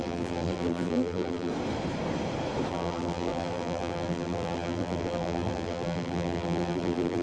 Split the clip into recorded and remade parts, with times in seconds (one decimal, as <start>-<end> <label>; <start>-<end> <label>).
0.0-1.5 remade; 1.5-2.7 recorded; 2.7-7.2 remade

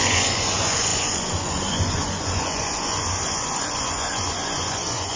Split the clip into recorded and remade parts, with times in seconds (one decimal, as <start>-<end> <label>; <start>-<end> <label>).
0.0-5.2 remade

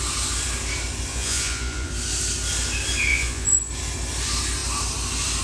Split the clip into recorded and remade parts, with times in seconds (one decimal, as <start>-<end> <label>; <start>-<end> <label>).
0.0-1.1 recorded; 1.1-1.9 remade; 1.9-3.1 recorded; 3.1-3.7 remade; 3.7-5.4 recorded

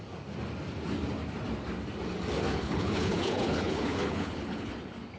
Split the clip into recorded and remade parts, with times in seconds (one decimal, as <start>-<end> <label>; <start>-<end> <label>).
0.0-2.5 recorded; 2.5-4.7 remade; 4.7-5.2 recorded